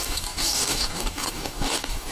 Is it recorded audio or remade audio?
remade